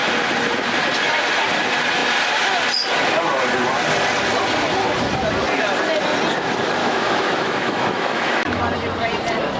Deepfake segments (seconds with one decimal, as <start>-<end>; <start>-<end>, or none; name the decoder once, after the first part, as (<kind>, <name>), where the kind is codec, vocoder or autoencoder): 6.8-8.6 (autoencoder, DAC-VAE)